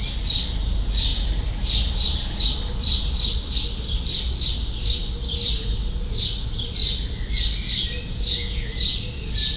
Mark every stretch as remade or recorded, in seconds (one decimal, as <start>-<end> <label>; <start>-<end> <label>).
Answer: 0.0-8.1 recorded; 8.1-8.8 remade; 8.8-9.6 recorded